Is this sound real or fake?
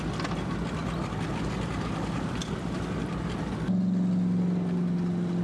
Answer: real